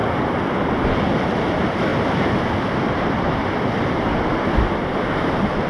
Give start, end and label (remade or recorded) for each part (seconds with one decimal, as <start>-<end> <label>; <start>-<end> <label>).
0.0-5.7 recorded